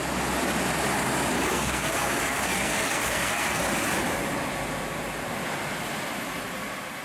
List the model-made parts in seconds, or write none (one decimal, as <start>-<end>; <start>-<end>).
1.5-3.6